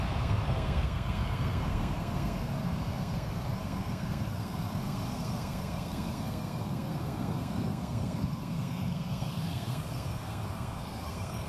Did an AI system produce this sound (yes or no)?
yes